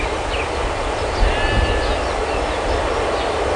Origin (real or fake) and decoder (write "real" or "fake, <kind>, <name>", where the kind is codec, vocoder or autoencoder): real